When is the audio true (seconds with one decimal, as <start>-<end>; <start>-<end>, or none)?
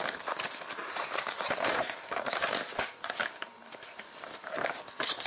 0.0-0.8; 4.0-5.3